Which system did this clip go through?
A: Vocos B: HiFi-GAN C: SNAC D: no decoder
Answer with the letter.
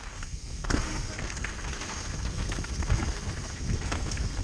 C